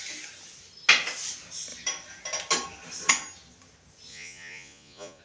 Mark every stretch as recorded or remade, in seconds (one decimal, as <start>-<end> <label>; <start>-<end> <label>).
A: 0.0-4.1 recorded; 4.1-5.2 remade